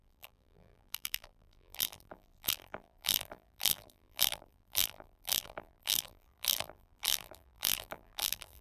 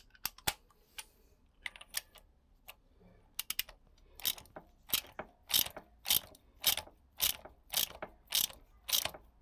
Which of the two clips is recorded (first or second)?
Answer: second